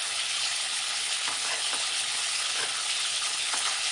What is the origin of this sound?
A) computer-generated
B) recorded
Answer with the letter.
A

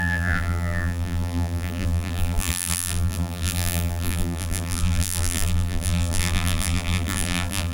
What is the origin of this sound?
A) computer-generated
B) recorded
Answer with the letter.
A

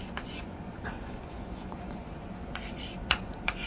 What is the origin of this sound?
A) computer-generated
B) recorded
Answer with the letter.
A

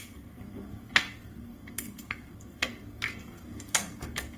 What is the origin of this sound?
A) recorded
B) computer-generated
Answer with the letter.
B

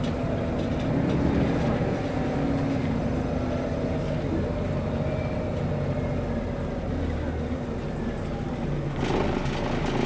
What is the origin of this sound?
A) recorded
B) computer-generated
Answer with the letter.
A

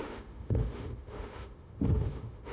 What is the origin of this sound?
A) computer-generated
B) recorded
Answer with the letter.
A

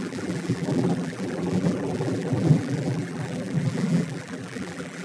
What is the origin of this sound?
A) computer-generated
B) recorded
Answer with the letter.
A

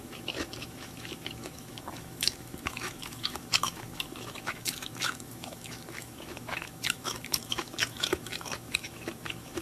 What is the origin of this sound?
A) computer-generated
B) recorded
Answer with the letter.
A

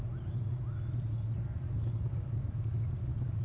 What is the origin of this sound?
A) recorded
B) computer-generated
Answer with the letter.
A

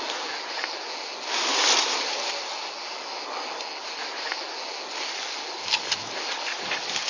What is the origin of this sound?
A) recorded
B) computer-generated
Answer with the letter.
A